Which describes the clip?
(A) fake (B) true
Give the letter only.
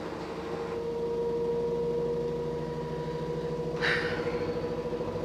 B